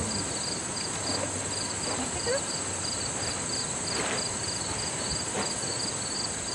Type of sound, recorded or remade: recorded